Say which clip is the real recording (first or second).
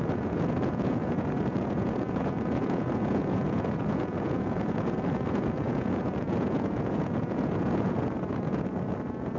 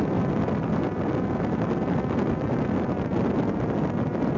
second